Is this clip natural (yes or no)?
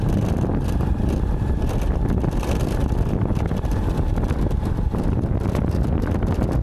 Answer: yes